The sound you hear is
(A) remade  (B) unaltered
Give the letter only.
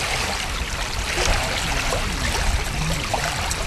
B